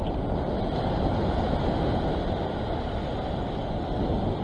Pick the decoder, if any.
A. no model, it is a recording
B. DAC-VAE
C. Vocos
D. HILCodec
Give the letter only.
A